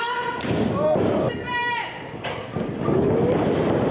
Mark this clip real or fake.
real